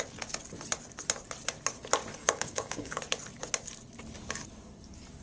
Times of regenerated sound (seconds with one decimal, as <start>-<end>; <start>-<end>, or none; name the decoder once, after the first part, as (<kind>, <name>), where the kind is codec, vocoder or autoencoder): 2.2-3.0 (codec, DAC)